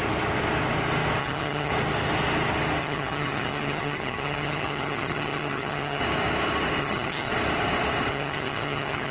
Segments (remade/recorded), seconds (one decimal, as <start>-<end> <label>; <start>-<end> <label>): 0.0-1.2 recorded; 1.2-1.7 remade; 1.7-2.8 recorded; 2.8-6.0 remade; 6.0-6.8 recorded; 6.8-7.3 remade; 7.3-8.1 recorded; 8.1-9.1 remade